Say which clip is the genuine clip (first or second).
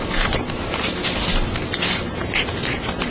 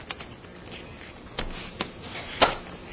second